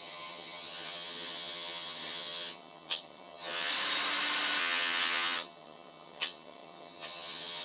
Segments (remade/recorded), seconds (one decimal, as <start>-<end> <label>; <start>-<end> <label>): 0.0-3.7 remade; 3.7-4.6 recorded; 4.6-7.6 remade